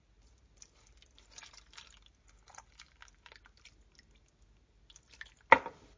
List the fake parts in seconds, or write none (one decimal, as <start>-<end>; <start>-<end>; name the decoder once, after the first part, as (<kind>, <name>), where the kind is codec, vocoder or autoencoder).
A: none